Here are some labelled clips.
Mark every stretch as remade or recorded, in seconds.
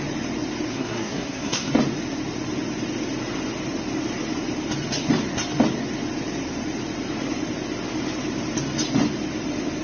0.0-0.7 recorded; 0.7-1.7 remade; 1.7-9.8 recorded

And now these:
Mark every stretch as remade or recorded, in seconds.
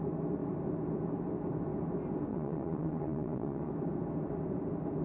0.0-2.3 recorded; 2.3-3.7 remade; 3.7-5.0 recorded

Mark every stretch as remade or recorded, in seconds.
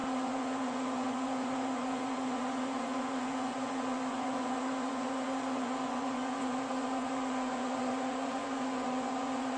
0.0-9.6 remade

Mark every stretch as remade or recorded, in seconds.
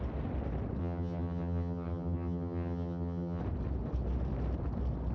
0.0-0.8 recorded; 0.8-3.4 remade; 3.4-5.1 recorded